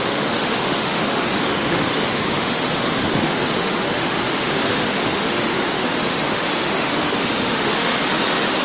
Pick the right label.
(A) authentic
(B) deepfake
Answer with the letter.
B